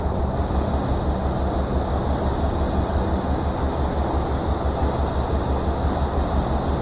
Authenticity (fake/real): real